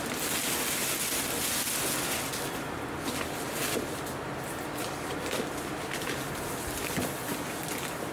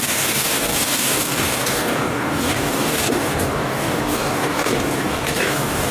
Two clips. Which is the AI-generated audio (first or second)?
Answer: second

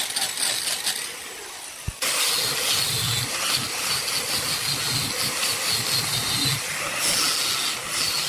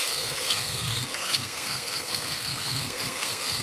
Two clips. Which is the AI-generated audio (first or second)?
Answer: second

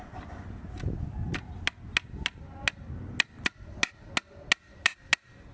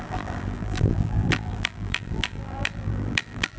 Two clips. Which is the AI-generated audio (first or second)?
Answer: second